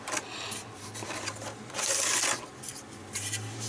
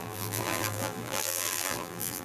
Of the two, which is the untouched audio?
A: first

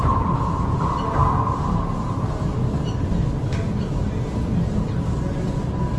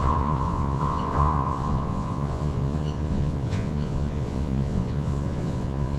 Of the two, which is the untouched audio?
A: first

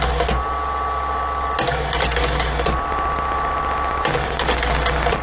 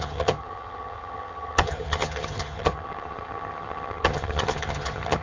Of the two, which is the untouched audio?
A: first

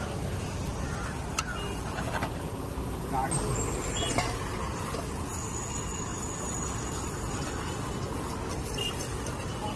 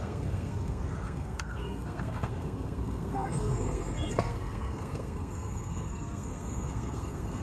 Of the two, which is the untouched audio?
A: first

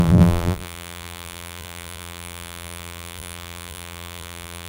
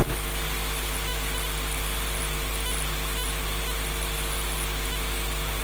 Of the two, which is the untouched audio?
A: second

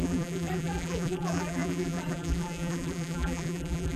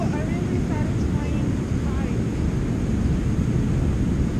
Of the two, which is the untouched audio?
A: second